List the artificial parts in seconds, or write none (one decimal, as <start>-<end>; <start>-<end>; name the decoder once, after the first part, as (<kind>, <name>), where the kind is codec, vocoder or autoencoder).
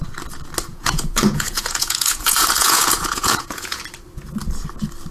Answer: 0.7-3.8 (vocoder, Vocos)